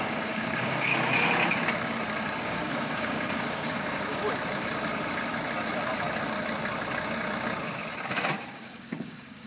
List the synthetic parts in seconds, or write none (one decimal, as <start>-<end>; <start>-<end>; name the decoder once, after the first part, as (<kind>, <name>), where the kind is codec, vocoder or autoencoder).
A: 0.0-0.9 (codec, DAC); 2.4-4.2; 8.5-9.5